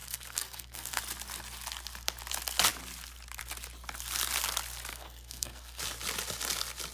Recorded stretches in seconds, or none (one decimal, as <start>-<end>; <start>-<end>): 1.0-4.9; 5.8-6.9